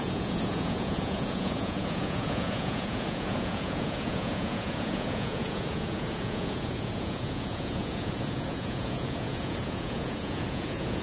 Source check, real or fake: fake